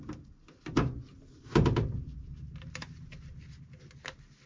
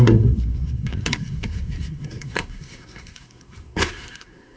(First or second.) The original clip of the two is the first